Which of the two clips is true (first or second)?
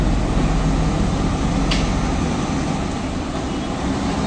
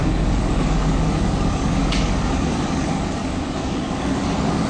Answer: first